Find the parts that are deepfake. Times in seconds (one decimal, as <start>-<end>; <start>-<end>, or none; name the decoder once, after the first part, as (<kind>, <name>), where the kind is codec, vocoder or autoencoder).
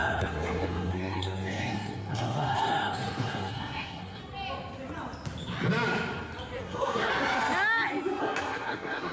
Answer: 0.0-4.2 (codec, SNAC); 6.6-7.1; 8.2-9.1